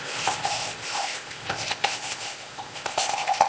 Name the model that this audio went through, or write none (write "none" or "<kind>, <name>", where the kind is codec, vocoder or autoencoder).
codec, ZipCodec